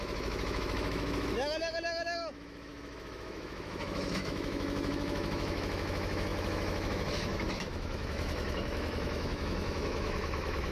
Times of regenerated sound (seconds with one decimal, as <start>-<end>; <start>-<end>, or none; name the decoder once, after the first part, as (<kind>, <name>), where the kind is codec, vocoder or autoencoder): 0.0-10.7 (autoencoder, DAC-VAE)